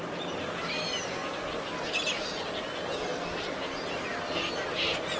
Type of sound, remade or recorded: recorded